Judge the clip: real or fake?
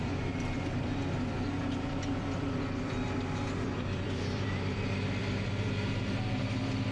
fake